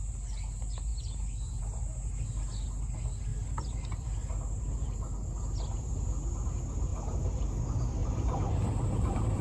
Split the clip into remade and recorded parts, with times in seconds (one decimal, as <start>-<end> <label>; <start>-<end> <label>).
0.0-6.9 recorded; 6.9-7.6 remade; 7.6-8.0 recorded; 8.0-9.4 remade